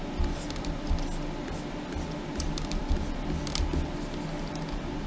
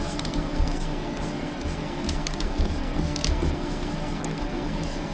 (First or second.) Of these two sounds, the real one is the first